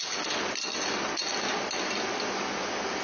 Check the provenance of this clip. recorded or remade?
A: recorded